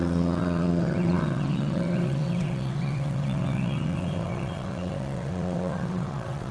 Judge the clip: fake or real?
fake